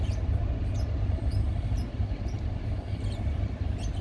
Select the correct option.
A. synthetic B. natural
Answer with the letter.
B